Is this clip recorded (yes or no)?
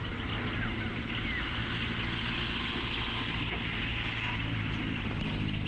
yes